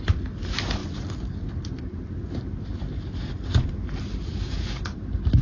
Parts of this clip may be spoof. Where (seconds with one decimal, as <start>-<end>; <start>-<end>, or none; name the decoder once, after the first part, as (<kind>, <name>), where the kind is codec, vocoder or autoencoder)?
0.8-4.0 (vocoder, BigVGAN v2)